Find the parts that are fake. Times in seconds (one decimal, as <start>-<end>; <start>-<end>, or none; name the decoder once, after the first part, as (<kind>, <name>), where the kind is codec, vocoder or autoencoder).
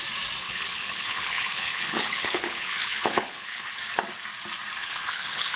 0.4-3.8 (codec, HILCodec); 4.8-5.6